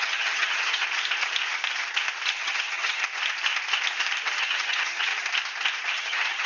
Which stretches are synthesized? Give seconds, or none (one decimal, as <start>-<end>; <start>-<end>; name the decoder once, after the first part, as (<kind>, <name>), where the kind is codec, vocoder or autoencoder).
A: 0.0-0.8 (vocoder, HiFi-GAN); 2.3-3.0; 4.4-5.1; 5.9-6.5